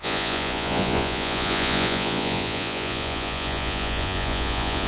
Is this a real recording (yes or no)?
no